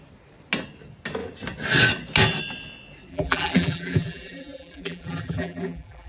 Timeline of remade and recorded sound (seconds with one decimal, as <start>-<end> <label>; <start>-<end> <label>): 0.0-3.1 recorded; 3.1-6.1 remade